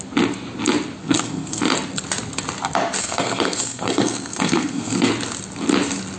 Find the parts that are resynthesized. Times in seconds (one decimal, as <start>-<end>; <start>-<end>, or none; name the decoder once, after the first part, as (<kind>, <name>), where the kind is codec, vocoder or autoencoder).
1.0-1.6 (codec, SNAC); 3.0-5.1